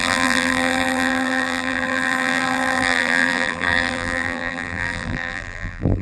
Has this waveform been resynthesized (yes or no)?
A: yes